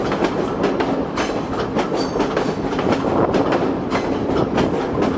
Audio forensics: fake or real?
real